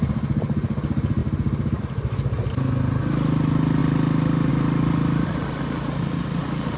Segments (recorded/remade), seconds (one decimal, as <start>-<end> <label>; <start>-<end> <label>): 0.0-6.8 recorded